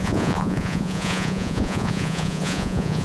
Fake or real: fake